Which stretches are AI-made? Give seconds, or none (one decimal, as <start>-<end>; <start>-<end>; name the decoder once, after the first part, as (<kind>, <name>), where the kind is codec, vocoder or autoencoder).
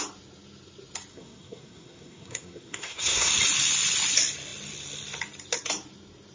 1.1-3.3 (codec, SNAC)